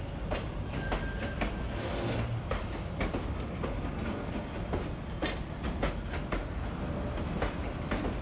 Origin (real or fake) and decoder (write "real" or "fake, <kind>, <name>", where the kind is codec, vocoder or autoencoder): real